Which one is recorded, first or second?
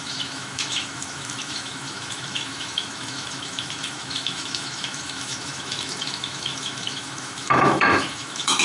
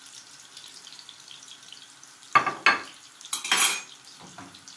second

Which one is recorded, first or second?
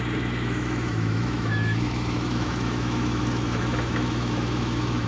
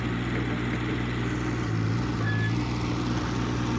second